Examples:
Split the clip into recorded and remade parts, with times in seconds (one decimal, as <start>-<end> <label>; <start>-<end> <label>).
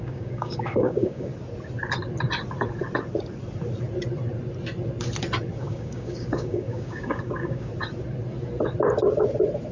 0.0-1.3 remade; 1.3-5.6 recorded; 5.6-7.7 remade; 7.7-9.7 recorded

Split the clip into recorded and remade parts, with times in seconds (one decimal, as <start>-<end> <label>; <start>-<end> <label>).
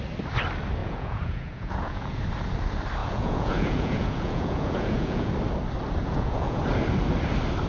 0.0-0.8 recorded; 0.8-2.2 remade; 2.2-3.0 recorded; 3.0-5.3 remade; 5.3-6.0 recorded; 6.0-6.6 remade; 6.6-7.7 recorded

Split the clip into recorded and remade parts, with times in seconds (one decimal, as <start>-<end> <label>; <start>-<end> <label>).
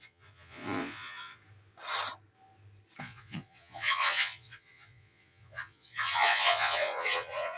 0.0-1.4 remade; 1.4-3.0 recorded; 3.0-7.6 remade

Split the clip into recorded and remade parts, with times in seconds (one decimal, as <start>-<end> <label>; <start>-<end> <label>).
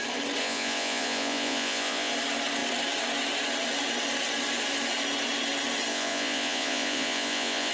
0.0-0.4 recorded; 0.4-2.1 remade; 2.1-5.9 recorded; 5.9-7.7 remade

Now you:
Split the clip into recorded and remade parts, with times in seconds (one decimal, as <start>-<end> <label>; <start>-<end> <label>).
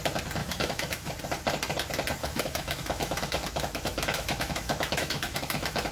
0.0-0.4 recorded; 0.4-1.1 remade; 1.1-2.2 recorded; 2.2-5.9 remade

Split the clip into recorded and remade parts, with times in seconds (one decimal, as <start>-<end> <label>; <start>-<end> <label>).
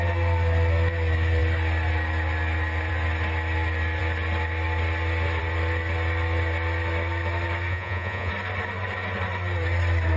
0.0-7.7 recorded; 7.7-8.3 remade; 8.3-10.2 recorded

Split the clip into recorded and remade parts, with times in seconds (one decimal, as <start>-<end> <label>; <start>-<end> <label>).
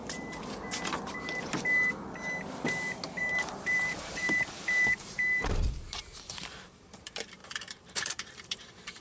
0.0-3.2 recorded; 3.2-9.0 remade